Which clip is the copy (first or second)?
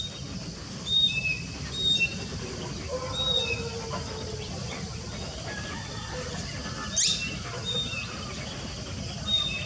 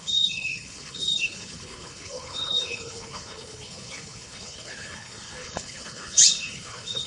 second